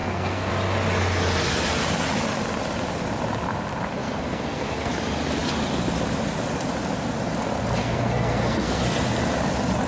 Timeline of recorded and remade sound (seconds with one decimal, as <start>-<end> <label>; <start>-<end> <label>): 0.0-0.5 remade; 0.5-4.0 recorded; 4.0-4.9 remade; 4.9-7.8 recorded; 7.8-8.8 remade; 8.8-9.9 recorded